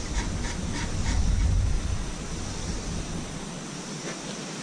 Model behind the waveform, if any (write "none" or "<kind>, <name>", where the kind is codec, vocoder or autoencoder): none